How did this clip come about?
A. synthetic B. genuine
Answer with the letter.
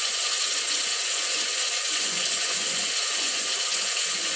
A